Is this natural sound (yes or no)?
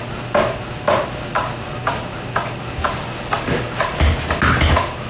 yes